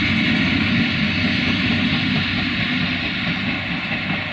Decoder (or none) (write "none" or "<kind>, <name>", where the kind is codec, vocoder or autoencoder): none